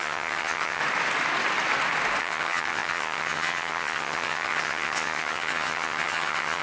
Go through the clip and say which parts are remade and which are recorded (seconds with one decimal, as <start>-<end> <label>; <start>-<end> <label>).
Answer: 0.0-0.8 remade; 0.8-2.2 recorded; 2.2-6.6 remade